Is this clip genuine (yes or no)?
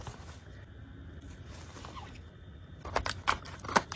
yes